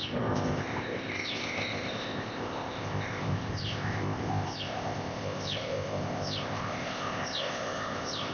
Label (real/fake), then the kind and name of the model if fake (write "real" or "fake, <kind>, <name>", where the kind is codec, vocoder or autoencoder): fake, codec, ZipCodec